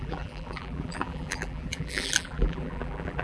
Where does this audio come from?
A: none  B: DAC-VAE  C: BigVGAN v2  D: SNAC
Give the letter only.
C